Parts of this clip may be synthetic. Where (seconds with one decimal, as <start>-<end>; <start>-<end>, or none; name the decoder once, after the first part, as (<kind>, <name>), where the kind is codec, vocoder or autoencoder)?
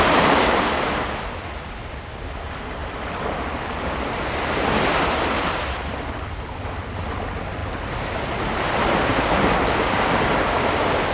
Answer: none